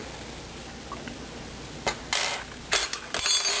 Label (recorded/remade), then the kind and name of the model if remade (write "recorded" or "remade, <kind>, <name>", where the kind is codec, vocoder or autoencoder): recorded